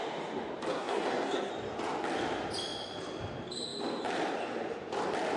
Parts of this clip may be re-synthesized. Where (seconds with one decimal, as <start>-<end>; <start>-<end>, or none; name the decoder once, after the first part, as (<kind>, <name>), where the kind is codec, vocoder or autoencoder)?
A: 0.7-1.5 (codec, SNAC)

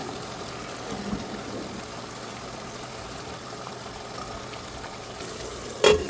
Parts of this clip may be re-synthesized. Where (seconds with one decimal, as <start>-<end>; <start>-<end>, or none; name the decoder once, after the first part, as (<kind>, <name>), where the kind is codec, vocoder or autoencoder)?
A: none

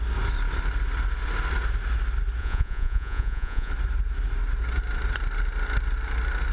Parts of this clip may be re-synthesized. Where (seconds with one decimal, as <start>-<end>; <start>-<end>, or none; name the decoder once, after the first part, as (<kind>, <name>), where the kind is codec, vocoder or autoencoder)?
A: 2.4-3.7 (vocoder, Vocos)